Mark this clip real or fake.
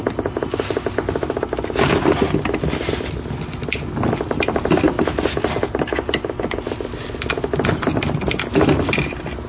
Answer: real